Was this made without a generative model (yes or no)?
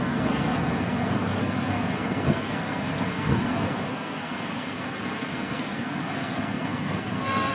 no